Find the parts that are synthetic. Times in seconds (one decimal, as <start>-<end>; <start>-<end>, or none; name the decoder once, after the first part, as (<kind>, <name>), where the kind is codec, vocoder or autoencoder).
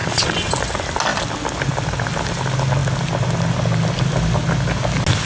0.0-0.5 (vocoder, Vocos)